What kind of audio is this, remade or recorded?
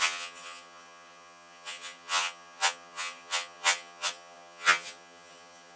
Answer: remade